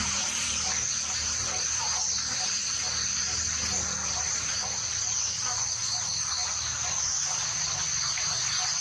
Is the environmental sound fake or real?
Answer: real